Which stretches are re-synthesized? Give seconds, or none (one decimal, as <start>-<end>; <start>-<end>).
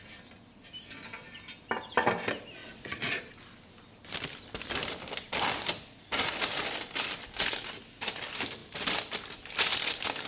2.6-3.3